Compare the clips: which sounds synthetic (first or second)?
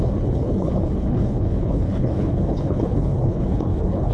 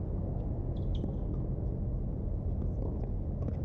first